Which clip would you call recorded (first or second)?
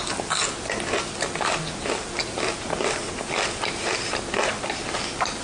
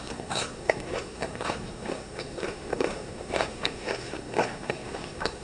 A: first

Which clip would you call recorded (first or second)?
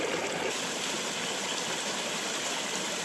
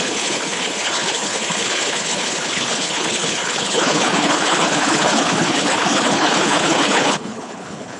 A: first